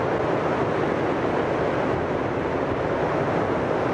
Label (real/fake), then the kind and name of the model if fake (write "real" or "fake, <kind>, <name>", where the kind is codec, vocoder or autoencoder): real